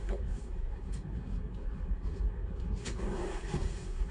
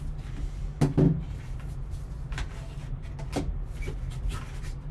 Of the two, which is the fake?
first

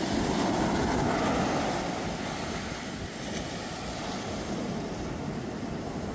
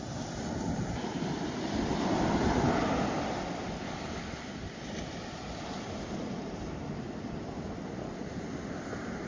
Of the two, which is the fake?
second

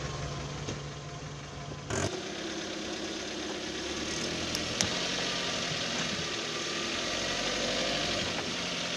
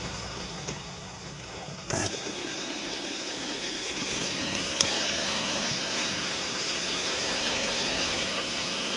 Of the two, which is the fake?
second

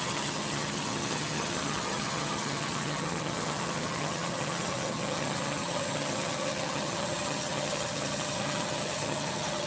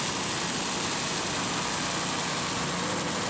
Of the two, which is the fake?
first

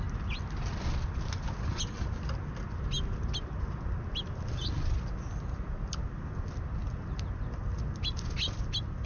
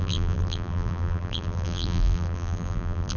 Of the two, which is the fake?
second